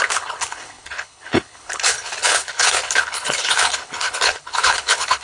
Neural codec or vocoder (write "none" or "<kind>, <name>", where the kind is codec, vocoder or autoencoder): codec, HILCodec